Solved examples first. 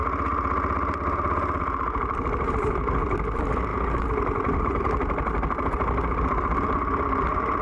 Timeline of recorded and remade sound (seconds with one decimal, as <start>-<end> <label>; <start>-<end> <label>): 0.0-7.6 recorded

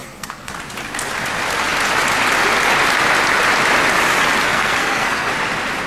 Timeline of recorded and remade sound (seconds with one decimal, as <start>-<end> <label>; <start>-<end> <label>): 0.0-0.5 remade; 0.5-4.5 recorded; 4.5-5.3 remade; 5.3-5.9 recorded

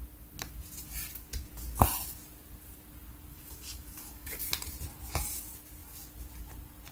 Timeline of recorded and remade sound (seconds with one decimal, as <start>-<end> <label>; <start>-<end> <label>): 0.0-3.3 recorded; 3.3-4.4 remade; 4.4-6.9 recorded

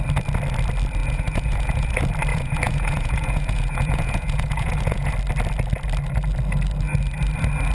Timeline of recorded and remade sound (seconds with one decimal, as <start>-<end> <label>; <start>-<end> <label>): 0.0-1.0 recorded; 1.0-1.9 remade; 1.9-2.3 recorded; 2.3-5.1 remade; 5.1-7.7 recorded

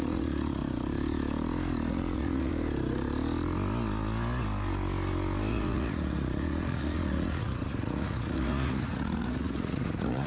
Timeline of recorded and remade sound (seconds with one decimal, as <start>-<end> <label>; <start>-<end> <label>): 0.0-0.6 remade; 0.6-1.9 recorded; 1.9-2.5 remade; 2.5-5.5 recorded; 5.5-10.3 remade

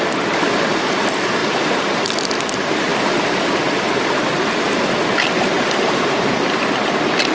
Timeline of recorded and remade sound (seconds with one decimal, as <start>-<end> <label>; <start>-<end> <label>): 0.0-1.4 recorded; 1.4-2.2 remade; 2.2-2.9 recorded; 2.9-4.4 remade; 4.4-7.3 recorded

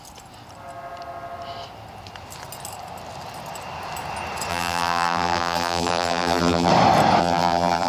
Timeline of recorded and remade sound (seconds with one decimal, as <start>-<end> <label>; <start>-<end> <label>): 0.0-4.5 recorded; 4.5-6.7 remade; 6.7-7.2 recorded; 7.2-7.9 remade